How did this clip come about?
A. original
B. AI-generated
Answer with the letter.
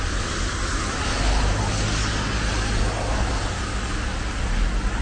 A